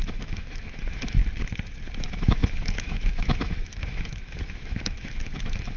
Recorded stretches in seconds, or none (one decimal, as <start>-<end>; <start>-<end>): 1.2-2.0